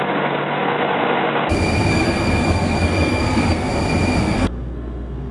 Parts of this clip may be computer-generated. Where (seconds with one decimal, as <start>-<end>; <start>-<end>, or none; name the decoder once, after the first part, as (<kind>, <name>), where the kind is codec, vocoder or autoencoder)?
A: 1.9-3.7 (codec, SNAC); 4.2-5.3